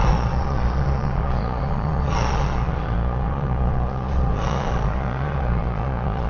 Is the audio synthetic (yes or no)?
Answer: yes